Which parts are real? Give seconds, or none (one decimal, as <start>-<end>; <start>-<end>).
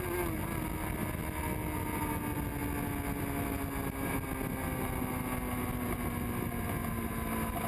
0.0-7.7